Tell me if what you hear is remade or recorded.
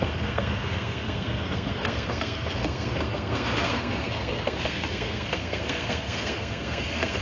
remade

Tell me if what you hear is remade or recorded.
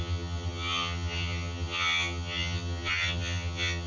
remade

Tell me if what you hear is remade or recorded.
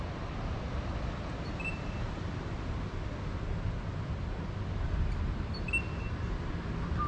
recorded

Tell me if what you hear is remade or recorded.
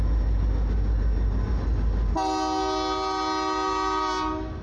recorded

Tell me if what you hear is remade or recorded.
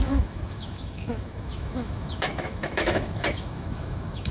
remade